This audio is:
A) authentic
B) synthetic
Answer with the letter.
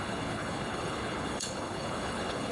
B